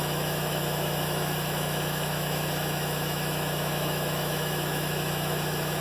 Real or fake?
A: fake